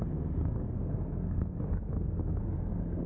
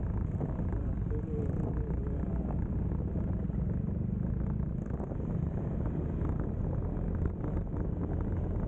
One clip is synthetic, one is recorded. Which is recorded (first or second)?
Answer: second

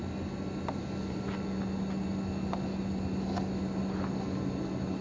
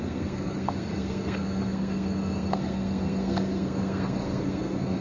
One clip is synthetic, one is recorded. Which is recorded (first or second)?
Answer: first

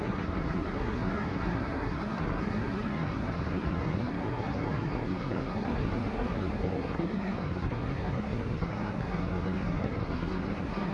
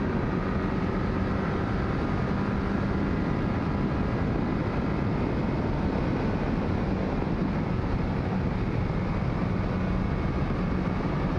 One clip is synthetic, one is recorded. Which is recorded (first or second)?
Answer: second